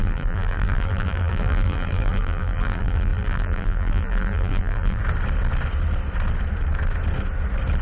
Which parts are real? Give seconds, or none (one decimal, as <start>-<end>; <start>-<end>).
5.0-7.8